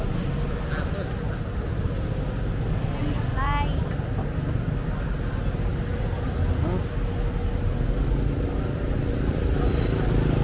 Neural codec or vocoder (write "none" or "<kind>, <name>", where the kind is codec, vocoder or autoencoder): none